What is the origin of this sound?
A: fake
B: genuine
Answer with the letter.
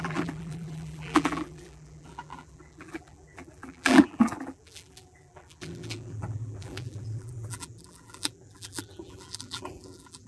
A